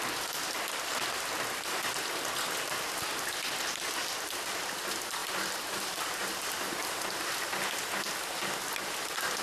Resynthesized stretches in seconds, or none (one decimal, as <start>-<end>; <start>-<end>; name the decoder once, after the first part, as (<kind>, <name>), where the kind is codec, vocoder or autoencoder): 5.2-6.5 (vocoder, BigVGAN v2)

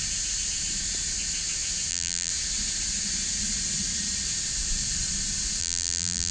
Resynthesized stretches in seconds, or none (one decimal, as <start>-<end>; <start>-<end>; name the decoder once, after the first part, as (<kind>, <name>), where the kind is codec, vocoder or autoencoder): 1.9-2.3 (vocoder, BigVGAN v2); 5.6-6.3

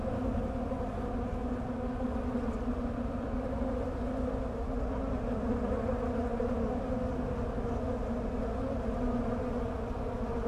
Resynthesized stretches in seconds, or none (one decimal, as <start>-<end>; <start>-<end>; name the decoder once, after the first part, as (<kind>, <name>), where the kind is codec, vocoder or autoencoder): none

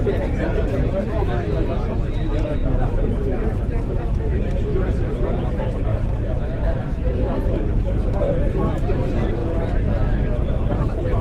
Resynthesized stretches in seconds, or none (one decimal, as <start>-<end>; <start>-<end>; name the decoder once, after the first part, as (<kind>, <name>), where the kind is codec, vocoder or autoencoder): 0.0-9.4 (vocoder, BigVGAN v2); 10.3-11.2

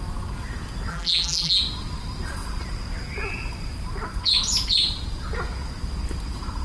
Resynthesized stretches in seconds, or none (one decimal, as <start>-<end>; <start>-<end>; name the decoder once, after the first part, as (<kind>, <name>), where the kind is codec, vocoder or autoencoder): 0.9-1.6 (vocoder, BigVGAN v2)